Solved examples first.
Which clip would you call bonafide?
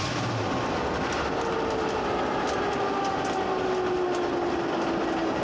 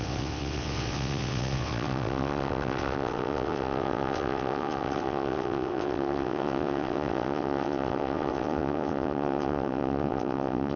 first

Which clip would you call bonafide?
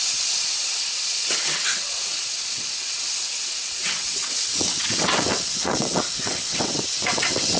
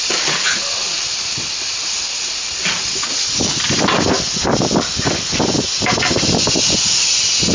second